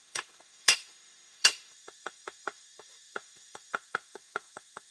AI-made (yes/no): yes